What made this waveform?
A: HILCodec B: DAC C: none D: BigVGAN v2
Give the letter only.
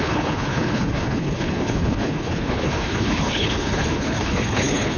A